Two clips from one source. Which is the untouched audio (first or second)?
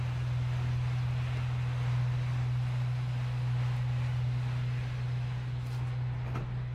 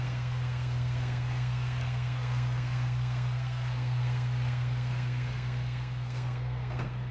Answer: first